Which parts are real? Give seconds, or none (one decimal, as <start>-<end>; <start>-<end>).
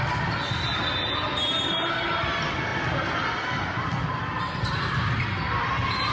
0.0-6.1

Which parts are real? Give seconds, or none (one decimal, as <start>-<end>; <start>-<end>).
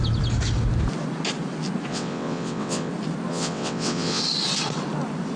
0.0-1.9; 2.9-3.3; 4.2-5.4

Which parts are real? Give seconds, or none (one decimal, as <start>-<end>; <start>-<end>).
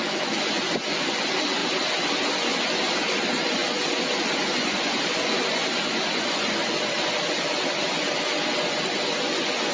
1.6-2.3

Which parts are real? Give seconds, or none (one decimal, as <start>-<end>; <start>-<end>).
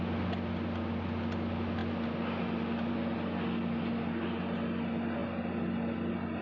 0.0-6.4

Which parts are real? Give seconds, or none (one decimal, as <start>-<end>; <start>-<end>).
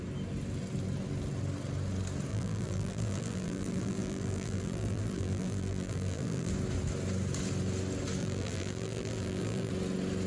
0.0-2.3; 6.5-8.2; 9.7-10.3